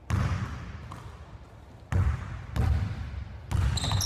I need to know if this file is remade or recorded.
recorded